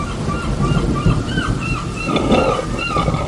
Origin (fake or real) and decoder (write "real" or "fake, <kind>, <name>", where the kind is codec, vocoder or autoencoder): real